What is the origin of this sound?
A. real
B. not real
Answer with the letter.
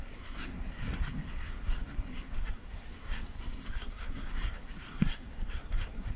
B